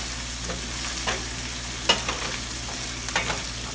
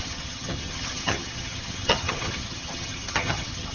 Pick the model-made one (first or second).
second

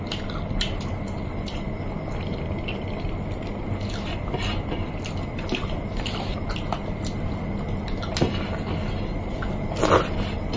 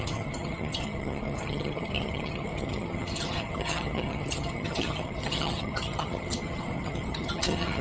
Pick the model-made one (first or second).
second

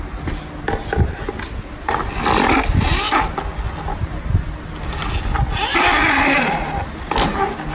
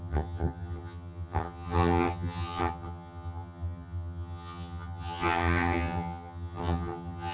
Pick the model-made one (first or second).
second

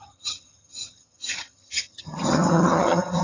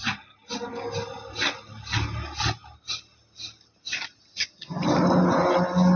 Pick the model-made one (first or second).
first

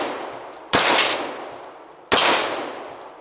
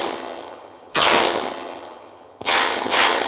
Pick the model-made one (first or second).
second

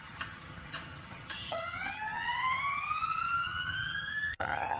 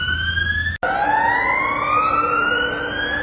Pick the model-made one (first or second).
first